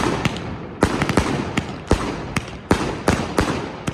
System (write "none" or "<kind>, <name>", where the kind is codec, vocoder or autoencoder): none